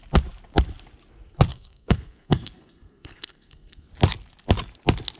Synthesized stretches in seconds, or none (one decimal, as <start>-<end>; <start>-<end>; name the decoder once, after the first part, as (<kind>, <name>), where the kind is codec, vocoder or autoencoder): 1.5-3.9 (codec, SNAC)